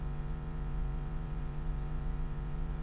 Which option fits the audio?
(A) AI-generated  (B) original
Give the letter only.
A